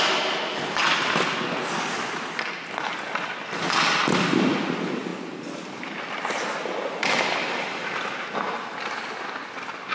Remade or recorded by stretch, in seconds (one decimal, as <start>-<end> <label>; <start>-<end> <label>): 0.0-9.9 recorded